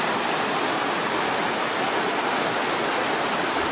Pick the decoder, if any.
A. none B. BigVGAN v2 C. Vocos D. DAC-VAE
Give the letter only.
A